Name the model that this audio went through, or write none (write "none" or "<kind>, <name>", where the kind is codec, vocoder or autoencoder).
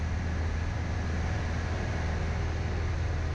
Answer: none